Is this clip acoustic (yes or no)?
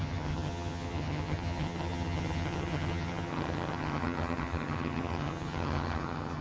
no